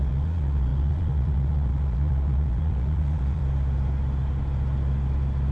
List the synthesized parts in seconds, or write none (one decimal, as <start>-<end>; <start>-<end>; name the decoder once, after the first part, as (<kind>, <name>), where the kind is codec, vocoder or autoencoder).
0.0-3.4 (vocoder, Vocos)